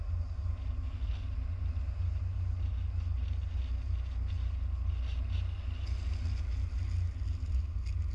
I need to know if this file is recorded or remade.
recorded